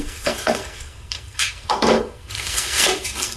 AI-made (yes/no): yes